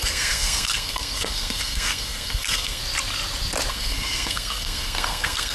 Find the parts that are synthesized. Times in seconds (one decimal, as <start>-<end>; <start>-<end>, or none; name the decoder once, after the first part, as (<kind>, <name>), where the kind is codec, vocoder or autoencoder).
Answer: 0.0-2.8 (codec, SNAC); 3.7-5.5